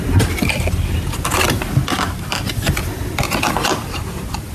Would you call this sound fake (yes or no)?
no